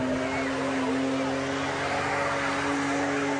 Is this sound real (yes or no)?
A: yes